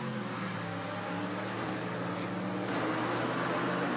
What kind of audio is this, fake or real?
real